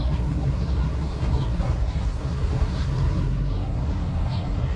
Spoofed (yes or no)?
yes